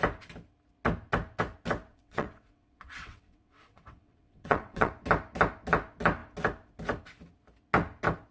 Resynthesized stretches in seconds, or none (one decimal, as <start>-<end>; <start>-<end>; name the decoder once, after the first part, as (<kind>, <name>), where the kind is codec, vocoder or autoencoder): 1.9-4.9 (vocoder, WaveNeXt)